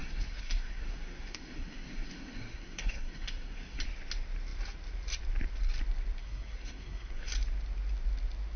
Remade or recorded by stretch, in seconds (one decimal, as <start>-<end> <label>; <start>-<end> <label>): 0.0-3.8 remade; 3.8-6.2 recorded; 6.2-7.3 remade; 7.3-8.6 recorded